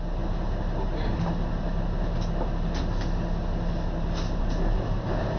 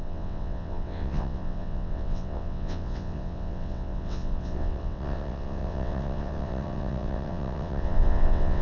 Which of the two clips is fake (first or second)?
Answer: second